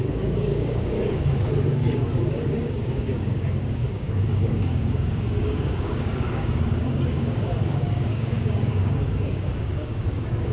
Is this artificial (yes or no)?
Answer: yes